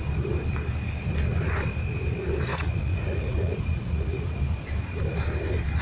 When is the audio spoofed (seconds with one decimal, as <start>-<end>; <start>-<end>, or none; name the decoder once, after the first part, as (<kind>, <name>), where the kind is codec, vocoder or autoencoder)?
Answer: 2.5-4.4 (vocoder, Vocos)